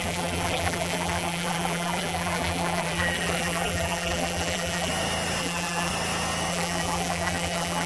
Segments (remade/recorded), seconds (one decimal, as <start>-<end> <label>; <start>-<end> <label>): 0.0-4.9 remade; 4.9-5.4 recorded; 5.4-5.9 remade; 5.9-6.5 recorded; 6.5-7.9 remade